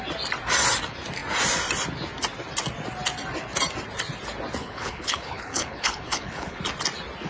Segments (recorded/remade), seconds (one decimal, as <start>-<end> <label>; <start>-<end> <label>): 0.0-4.6 recorded; 4.6-6.6 remade; 6.6-7.3 recorded